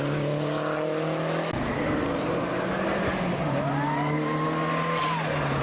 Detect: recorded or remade recorded